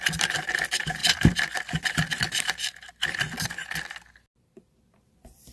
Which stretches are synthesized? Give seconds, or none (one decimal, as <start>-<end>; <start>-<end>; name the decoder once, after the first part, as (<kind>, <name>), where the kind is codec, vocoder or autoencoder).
0.0-3.6 (vocoder, BigVGAN v2); 4.6-5.5